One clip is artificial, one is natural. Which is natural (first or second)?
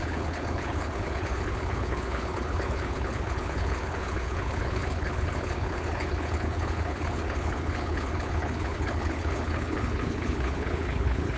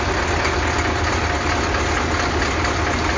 second